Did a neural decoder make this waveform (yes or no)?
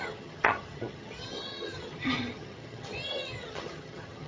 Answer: yes